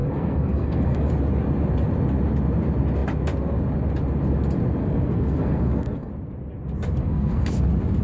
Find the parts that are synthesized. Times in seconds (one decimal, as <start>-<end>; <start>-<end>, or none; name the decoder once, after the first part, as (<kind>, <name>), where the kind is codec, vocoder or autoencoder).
0.0-1.1 (codec, SNAC); 4.8-6.1; 7.0-7.6